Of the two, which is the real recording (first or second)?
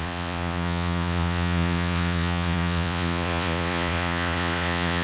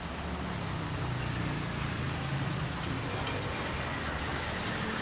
second